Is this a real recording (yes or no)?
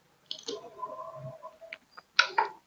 yes